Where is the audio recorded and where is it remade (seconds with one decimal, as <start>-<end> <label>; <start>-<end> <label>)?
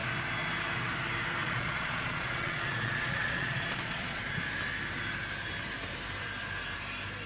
0.0-1.4 recorded; 1.4-4.2 remade; 4.2-7.3 recorded